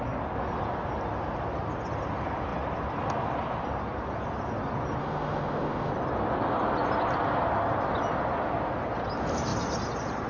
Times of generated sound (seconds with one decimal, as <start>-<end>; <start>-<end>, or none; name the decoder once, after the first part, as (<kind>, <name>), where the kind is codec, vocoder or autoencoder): 5.0-5.9 (autoencoder, DAC-VAE)